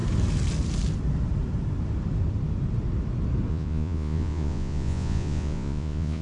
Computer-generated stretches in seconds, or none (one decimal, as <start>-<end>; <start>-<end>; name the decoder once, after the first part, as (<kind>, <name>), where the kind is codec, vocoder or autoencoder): 3.5-6.2 (vocoder, Vocos)